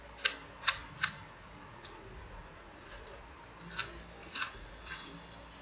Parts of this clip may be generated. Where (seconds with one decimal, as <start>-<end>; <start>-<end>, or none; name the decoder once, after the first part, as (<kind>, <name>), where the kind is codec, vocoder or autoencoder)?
0.4-3.4 (vocoder, Vocos); 4.2-5.1